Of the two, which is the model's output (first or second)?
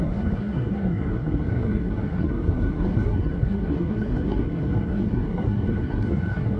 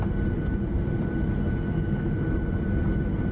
first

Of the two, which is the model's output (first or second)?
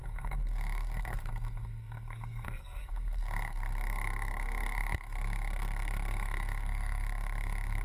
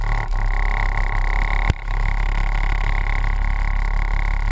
first